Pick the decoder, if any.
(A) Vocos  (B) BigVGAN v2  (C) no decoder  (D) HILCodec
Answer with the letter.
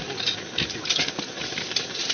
C